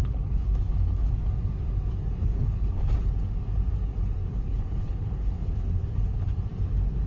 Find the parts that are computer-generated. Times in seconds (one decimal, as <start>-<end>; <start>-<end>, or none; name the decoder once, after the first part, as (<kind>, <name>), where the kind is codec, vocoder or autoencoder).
0.0-1.1 (codec, HILCodec); 2.2-2.9; 4.2-6.4